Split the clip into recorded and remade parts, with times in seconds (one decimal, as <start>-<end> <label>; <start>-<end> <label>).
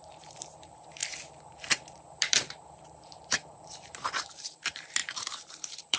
0.0-6.0 remade